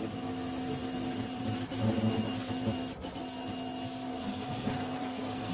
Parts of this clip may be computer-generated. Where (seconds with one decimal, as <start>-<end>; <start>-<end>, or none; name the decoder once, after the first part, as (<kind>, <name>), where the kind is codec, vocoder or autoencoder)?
4.1-5.5 (codec, SNAC)